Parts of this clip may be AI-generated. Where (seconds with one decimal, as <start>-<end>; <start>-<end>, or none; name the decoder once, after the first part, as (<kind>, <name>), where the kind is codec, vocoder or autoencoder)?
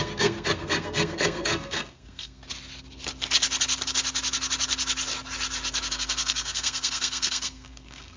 0.0-2.4 (codec, SNAC); 5.9-8.2